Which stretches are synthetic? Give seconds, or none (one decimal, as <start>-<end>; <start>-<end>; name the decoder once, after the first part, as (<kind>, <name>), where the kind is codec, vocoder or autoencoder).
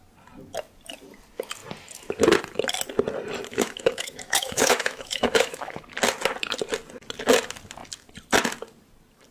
3.5-5.8 (autoencoder, DAC-VAE)